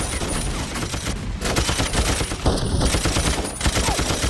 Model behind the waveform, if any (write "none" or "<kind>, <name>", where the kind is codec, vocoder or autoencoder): none